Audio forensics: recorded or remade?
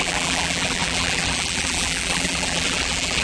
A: remade